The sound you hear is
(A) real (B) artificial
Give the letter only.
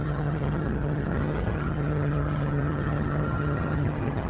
B